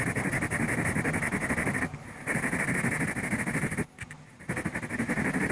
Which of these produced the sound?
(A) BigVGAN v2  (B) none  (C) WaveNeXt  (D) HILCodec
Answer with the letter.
B